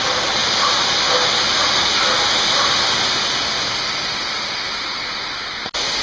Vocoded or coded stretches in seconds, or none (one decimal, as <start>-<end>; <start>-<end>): none